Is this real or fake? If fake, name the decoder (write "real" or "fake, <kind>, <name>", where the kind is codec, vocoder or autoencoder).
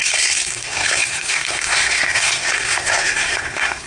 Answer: fake, codec, SNAC